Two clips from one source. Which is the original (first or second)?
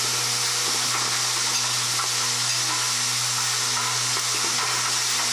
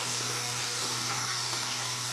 first